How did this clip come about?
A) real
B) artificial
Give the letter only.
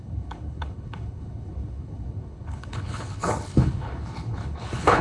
B